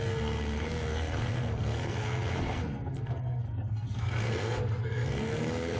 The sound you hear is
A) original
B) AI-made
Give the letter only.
B